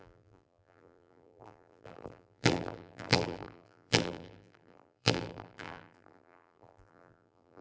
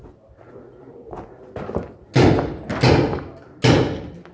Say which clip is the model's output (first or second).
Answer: first